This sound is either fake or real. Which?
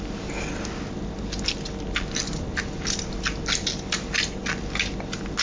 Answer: real